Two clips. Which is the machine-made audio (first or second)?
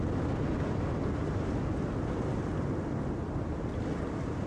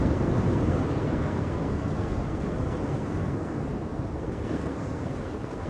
second